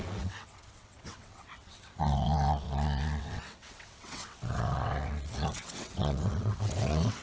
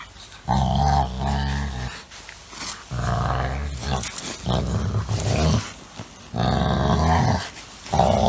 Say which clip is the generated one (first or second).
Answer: first